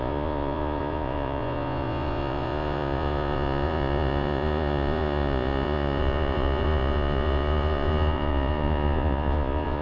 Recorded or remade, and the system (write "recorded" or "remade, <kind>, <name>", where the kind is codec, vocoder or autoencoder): remade, vocoder, Vocos